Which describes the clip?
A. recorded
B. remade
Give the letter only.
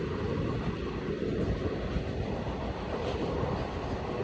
A